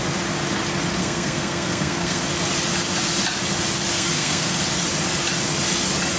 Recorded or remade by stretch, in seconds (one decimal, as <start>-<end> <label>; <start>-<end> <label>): 0.0-1.0 recorded; 1.0-2.2 remade; 2.2-3.9 recorded; 3.9-4.6 remade; 4.6-6.2 recorded